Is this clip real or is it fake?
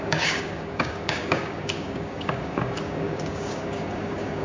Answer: fake